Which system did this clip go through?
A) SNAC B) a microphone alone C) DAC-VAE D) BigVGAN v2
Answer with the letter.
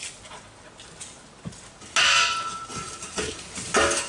B